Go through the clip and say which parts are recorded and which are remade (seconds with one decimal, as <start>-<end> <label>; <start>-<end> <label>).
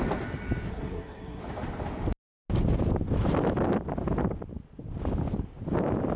0.0-0.7 recorded; 0.7-1.4 remade; 1.4-6.2 recorded